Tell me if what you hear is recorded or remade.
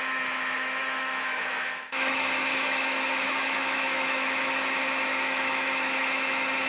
remade